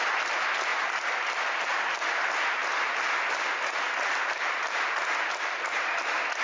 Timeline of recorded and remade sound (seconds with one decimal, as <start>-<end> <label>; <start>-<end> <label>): 0.0-6.4 recorded